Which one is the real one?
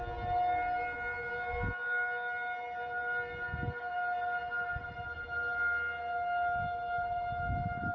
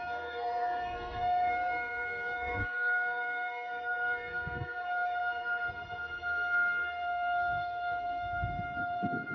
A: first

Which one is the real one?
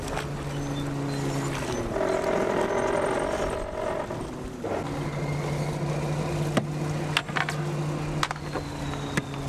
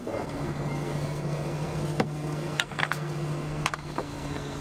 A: first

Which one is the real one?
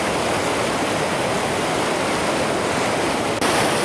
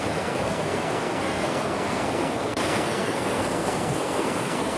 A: first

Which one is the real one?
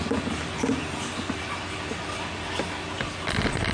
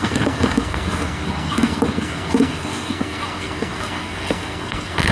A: first